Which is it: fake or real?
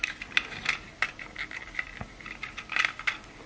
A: real